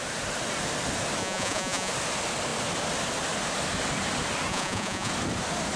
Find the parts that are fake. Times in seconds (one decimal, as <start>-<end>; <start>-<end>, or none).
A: 1.2-1.9; 4.5-5.1